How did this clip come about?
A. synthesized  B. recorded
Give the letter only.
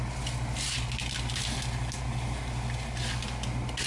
B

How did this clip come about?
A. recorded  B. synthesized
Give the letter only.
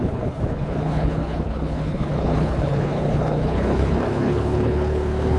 B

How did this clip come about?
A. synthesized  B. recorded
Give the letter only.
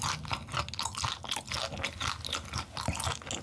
B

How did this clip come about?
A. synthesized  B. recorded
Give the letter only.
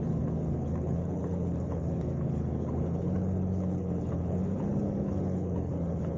A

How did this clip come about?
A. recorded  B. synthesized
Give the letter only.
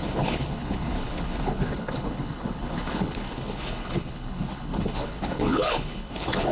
B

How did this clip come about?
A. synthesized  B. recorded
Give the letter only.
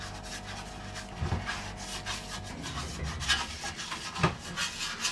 B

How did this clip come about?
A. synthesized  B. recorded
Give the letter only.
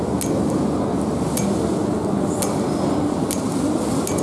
B